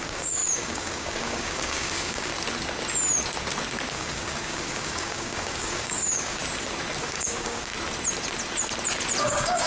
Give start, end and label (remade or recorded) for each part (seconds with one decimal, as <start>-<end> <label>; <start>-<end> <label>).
0.0-2.3 remade; 2.3-3.9 recorded; 3.9-6.4 remade; 6.4-7.0 recorded; 7.0-7.7 remade; 7.7-9.2 recorded; 9.2-9.7 remade